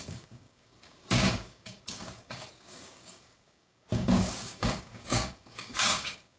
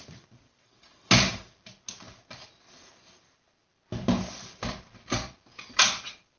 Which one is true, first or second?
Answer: second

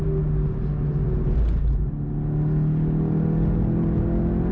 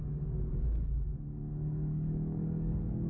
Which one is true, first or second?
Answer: first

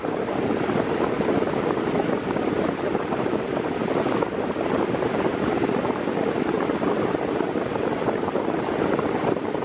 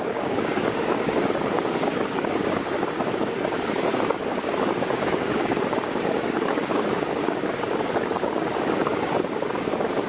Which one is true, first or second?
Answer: first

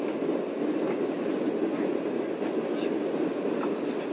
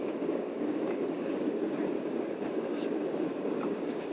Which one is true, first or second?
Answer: first